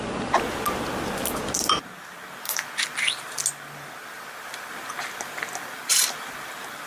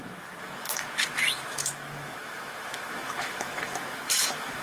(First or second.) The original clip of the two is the first